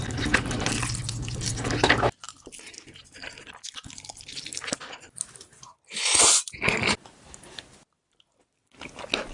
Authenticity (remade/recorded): recorded